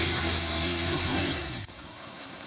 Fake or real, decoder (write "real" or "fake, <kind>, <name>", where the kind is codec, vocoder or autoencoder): fake, codec, SNAC